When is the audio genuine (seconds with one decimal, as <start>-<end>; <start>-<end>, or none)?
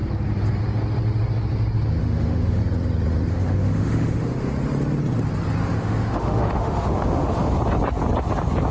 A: 0.0-2.0; 2.6-3.3; 4.5-5.6; 7.5-8.7